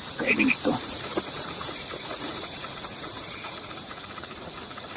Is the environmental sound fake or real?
fake